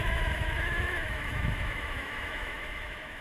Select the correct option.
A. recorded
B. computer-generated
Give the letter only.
B